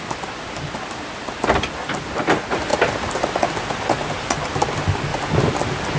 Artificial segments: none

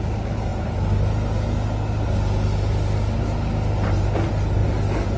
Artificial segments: none

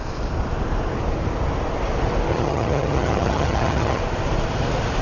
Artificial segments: 2.3-4.0

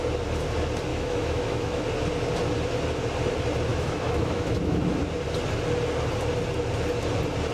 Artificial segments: 0.9-1.8; 3.7-5.0

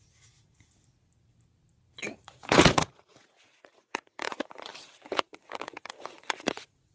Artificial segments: 0.0-0.8; 2.1-6.9

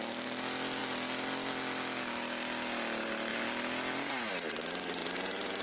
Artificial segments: none